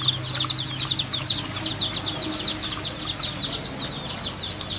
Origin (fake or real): real